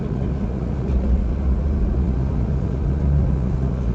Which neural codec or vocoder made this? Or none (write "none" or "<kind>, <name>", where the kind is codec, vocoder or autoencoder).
vocoder, Vocos